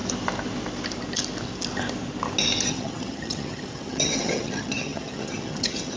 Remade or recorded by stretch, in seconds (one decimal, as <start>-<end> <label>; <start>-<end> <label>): 0.0-2.7 recorded; 2.7-6.0 remade